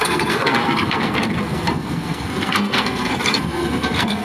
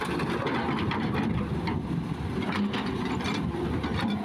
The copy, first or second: first